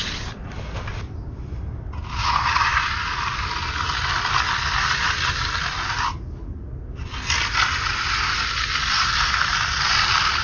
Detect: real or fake real